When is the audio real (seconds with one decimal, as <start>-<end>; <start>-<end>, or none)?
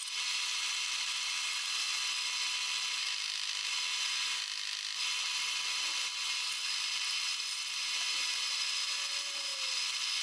0.0-10.2